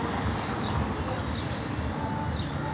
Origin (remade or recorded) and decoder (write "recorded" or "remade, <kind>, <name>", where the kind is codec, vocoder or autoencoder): recorded